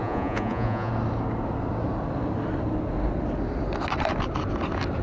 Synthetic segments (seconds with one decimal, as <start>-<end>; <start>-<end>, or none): 0.0-0.9